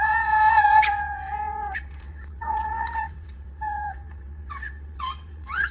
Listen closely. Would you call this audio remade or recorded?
remade